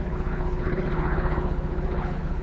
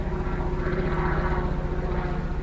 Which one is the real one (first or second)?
second